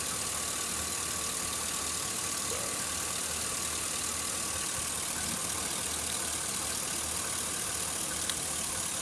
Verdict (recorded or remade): recorded